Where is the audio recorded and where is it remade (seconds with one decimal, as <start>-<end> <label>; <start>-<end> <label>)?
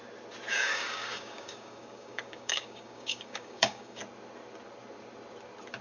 0.0-0.5 recorded; 0.5-4.0 remade; 4.0-5.8 recorded